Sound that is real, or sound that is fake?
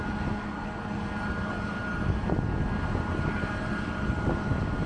real